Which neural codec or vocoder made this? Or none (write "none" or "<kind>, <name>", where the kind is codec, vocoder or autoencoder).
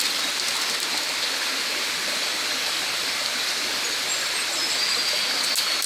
none